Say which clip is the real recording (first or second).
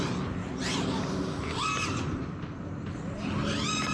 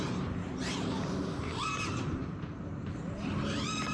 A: first